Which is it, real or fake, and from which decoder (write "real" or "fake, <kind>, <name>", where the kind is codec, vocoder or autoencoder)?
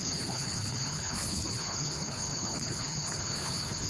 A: fake, codec, HILCodec